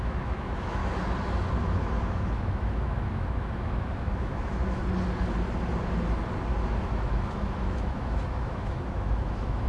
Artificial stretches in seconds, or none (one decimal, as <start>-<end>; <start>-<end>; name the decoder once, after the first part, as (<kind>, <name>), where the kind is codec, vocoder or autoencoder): 0.0-0.8 (autoencoder, DAC-VAE); 1.6-4.8; 6.8-9.7